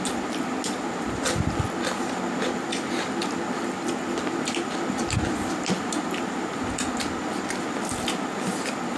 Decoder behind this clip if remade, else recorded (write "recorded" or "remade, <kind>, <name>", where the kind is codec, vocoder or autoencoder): recorded